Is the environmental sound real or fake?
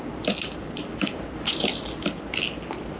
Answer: real